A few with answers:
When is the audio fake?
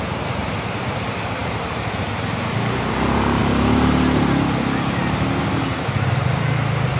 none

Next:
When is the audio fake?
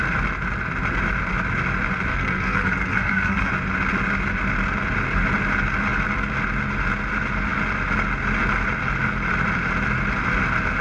2.1-3.5 (codec, SNAC)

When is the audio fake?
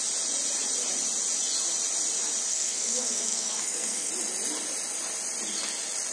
2.5-4.1 (codec, SNAC)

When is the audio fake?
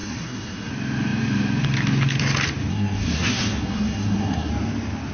0.0-0.7 (codec, SNAC); 2.7-4.5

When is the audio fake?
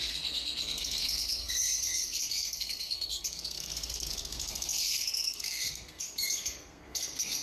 0.0-7.4 (codec, SNAC)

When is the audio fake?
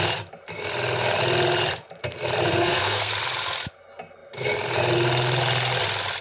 2.5-3.1 (codec, SNAC)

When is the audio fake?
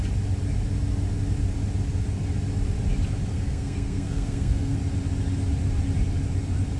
3.3-4.8 (codec, SNAC)